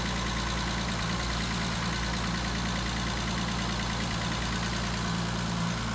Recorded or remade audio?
recorded